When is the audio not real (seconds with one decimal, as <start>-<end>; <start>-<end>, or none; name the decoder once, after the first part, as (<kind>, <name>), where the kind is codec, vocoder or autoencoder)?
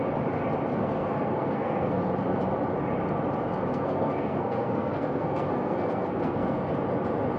0.7-2.0 (codec, SNAC); 3.7-6.7